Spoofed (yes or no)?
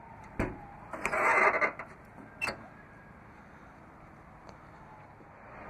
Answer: no